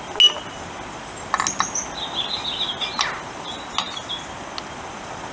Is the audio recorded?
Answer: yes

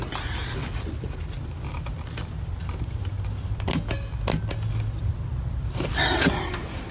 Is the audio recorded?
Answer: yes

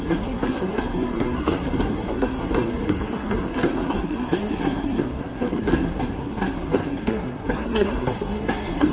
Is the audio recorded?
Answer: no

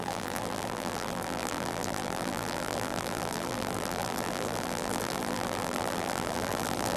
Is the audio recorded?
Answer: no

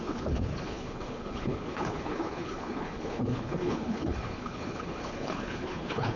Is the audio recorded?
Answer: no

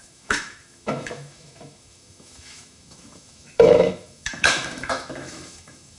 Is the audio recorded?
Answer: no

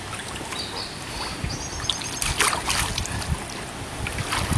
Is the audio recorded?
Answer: no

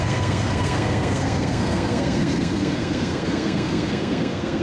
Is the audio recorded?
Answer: no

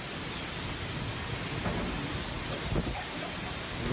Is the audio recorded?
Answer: yes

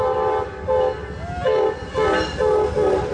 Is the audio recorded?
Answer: yes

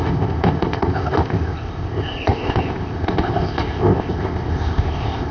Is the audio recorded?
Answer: no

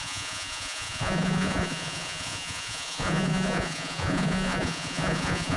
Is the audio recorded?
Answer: no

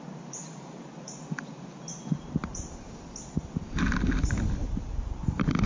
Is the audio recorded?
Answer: yes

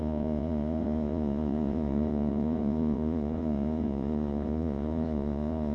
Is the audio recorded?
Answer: no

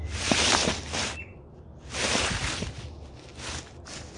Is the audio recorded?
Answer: yes